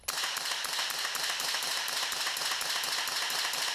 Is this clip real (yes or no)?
yes